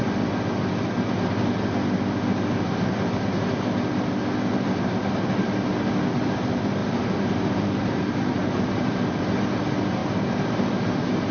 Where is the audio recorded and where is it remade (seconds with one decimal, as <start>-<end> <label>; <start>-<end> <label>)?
0.0-6.8 recorded; 6.8-9.2 remade; 9.2-10.0 recorded; 10.0-11.3 remade